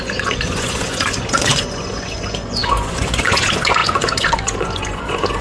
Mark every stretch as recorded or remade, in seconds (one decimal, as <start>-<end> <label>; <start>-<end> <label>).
0.0-5.4 remade